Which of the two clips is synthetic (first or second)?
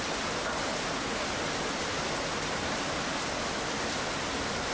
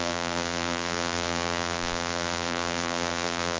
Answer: second